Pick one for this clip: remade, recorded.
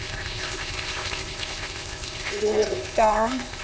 remade